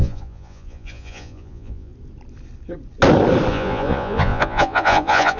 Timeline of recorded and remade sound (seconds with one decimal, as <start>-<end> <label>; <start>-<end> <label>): 0.0-1.9 remade; 1.9-3.5 recorded; 3.5-5.4 remade